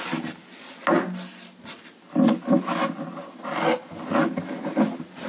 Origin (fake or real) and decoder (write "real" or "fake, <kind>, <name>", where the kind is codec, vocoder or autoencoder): real